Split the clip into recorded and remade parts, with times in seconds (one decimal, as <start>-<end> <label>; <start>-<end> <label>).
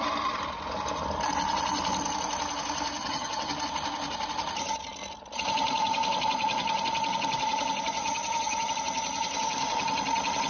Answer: 0.0-3.0 recorded; 3.0-3.5 remade; 3.5-8.0 recorded; 8.0-8.7 remade; 8.7-10.5 recorded